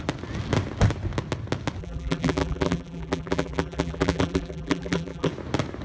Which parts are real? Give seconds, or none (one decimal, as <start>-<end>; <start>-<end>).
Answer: 0.0-1.8; 5.3-5.8